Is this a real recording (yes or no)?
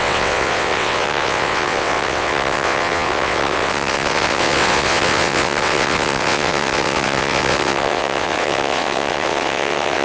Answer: no